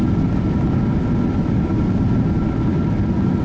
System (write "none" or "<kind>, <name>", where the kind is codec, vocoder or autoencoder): none